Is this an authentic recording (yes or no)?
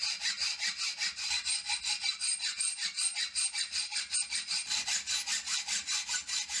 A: yes